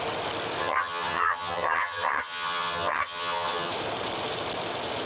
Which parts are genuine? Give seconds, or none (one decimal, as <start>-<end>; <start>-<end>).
0.0-0.6; 3.7-5.1